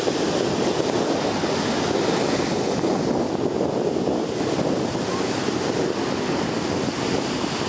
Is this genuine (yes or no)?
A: yes